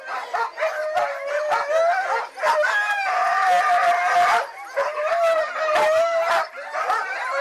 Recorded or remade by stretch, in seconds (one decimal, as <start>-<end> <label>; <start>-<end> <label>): 0.0-0.8 recorded; 0.8-1.9 remade; 1.9-5.0 recorded; 5.0-6.5 remade; 6.5-7.4 recorded